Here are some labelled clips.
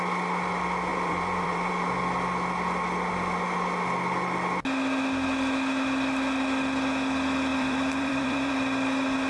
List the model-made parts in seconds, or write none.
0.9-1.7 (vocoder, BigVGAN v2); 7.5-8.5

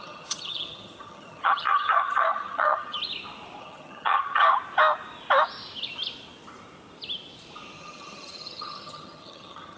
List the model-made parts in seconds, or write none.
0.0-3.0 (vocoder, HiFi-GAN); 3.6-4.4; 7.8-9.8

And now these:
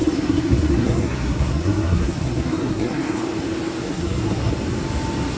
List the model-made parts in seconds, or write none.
0.0-3.2 (codec, SNAC); 3.8-4.5

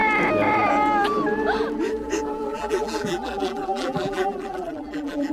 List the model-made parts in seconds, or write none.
2.5-5.3 (vocoder, BigVGAN v2)

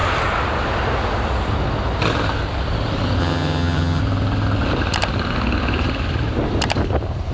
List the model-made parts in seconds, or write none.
3.2-4.0 (vocoder, HiFi-GAN)

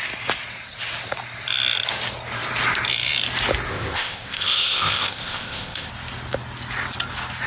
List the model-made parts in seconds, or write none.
3.7-5.9 (codec, ZipCodec)

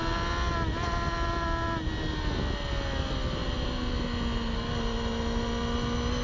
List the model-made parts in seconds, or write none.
none